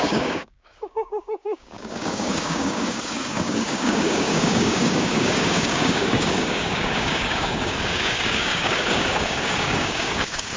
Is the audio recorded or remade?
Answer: remade